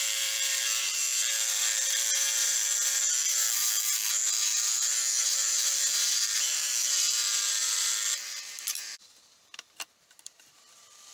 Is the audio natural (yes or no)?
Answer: no